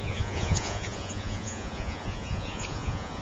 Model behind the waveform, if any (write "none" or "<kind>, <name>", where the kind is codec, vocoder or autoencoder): vocoder, Vocos